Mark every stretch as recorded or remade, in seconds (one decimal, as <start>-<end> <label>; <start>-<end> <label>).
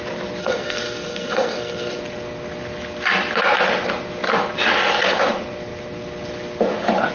0.0-0.4 recorded; 0.4-2.0 remade; 2.0-7.1 recorded